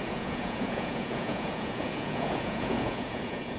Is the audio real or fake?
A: fake